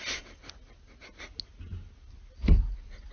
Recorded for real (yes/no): yes